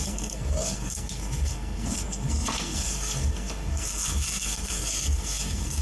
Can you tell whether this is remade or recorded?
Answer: remade